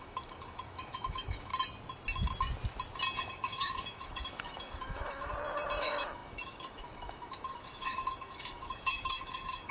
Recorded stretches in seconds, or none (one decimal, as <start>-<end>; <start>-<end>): 1.5-3.2; 5.3-5.8